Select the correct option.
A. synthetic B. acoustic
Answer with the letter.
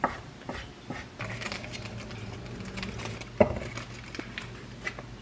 B